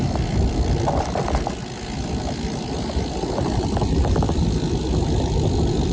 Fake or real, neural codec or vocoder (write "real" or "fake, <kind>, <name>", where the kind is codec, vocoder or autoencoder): real